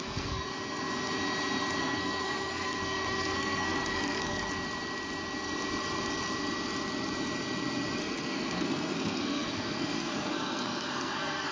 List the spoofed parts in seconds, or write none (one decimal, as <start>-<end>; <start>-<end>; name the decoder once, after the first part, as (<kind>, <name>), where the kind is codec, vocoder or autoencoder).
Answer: 0.0-0.5 (codec, SNAC); 1.8-4.5; 8.0-11.5